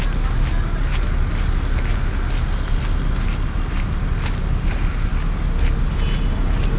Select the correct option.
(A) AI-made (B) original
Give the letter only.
B